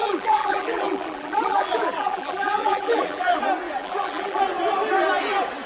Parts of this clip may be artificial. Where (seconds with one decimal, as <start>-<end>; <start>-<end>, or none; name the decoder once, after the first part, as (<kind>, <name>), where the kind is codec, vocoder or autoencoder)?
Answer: 0.0-3.4 (vocoder, BigVGAN v2); 3.8-4.4